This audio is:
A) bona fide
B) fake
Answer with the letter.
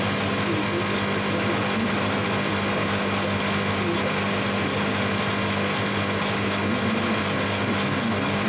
A